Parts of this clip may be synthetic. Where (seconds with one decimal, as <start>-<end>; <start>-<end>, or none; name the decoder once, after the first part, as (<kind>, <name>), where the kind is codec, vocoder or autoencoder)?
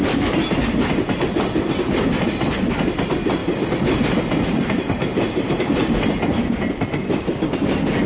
none